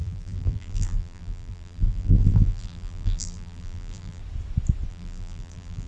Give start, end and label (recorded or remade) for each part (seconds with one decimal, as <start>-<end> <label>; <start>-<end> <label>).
0.0-4.2 remade; 4.2-4.9 recorded; 4.9-5.9 remade